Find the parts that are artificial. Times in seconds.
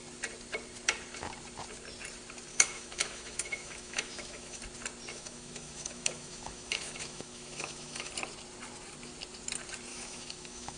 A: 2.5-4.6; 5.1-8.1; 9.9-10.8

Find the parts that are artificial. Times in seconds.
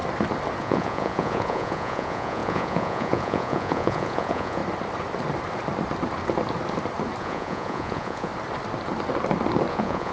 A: 0.6-4.6; 7.2-8.3; 9.7-10.1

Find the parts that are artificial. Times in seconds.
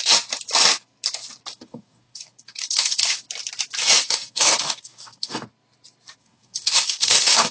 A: 1.5-3.2; 3.8-5.4; 6.2-7.5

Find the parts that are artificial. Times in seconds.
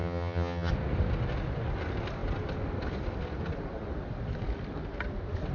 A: 0.0-0.7